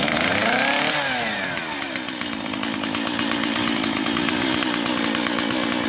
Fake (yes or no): no